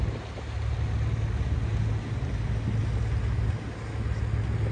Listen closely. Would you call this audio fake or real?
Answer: real